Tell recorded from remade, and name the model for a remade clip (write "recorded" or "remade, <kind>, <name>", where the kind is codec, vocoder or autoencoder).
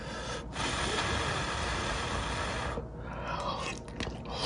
recorded